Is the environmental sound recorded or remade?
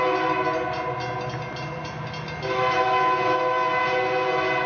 recorded